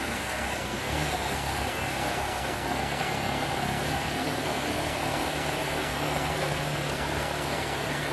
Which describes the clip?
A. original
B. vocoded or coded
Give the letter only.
B